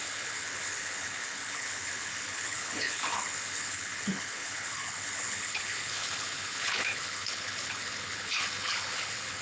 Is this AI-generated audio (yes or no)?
yes